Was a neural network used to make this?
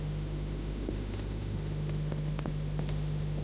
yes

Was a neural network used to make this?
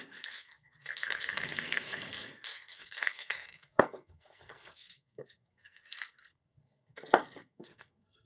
yes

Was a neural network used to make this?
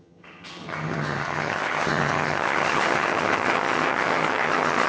yes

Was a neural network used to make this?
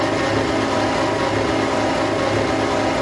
no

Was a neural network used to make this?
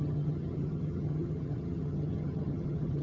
yes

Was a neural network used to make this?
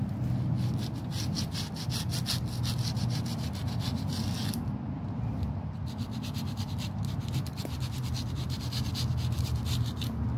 no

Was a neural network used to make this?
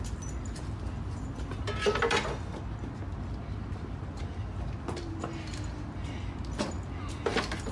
no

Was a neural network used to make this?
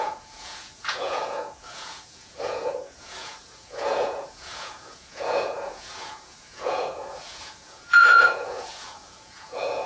yes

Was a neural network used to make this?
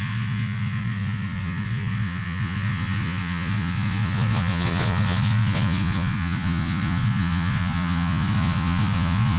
yes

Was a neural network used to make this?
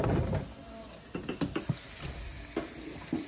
no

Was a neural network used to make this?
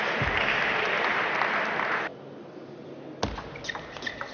no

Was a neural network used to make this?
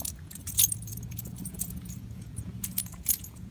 yes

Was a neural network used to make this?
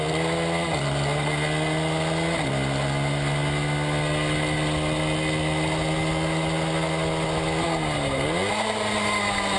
no